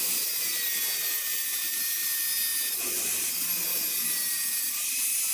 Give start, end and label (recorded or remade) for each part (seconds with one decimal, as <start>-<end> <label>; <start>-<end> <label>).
0.0-5.3 recorded